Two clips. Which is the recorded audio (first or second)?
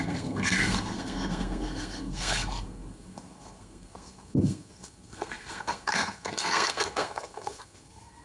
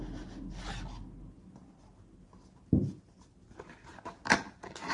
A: second